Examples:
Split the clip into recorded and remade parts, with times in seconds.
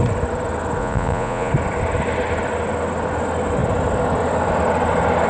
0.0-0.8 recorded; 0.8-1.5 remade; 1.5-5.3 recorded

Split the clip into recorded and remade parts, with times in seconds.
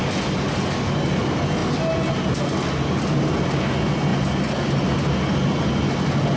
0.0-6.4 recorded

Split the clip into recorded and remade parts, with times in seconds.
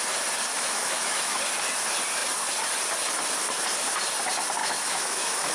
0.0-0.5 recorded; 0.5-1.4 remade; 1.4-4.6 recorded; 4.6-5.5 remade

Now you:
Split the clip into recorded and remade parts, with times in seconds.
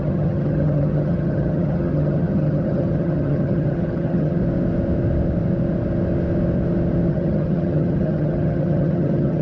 0.0-4.4 remade; 4.4-7.1 recorded; 7.1-9.4 remade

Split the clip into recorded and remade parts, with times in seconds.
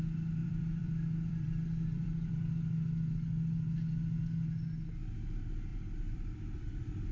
0.0-0.4 recorded; 0.4-2.3 remade; 2.3-5.7 recorded; 5.7-7.1 remade